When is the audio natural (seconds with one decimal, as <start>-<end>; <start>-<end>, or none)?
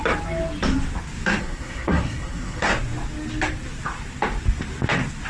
0.0-1.4; 2.7-5.3